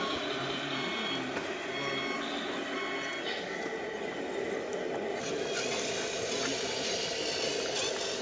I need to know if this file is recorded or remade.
recorded